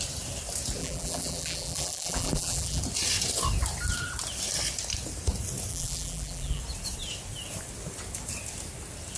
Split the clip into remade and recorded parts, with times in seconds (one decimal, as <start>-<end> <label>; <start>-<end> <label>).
0.0-0.8 recorded; 0.8-2.8 remade; 2.8-5.7 recorded; 5.7-6.6 remade; 6.6-9.2 recorded